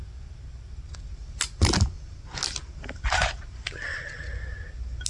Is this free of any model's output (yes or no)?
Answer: yes